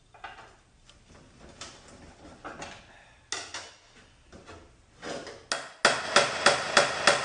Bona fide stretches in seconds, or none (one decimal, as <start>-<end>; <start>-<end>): 0.0-7.2